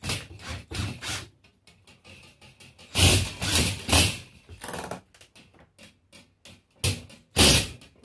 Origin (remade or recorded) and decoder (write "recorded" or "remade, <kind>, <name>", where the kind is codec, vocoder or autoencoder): recorded